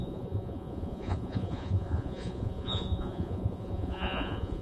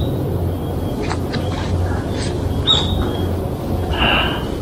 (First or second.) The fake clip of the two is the first